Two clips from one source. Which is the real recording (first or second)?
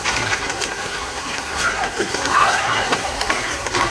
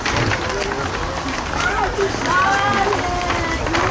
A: second